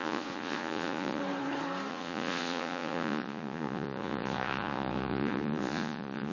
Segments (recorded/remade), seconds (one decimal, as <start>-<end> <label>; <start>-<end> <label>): 0.0-1.2 remade; 1.2-1.9 recorded; 1.9-6.3 remade